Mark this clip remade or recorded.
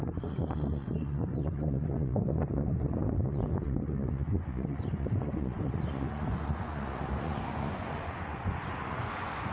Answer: remade